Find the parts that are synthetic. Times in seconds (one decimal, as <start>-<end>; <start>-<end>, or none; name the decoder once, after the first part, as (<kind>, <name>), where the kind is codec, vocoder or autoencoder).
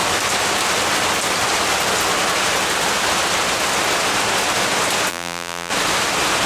5.1-5.7 (vocoder, BigVGAN v2)